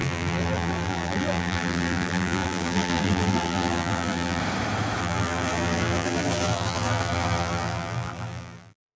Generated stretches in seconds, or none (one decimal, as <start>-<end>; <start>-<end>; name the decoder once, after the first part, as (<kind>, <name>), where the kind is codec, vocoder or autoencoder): 0.0-4.4 (vocoder, BigVGAN v2); 5.0-9.0